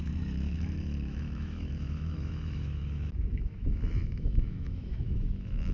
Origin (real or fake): fake